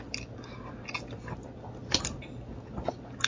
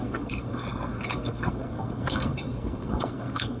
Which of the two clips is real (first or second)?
first